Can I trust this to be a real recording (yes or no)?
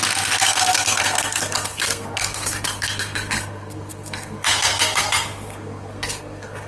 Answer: no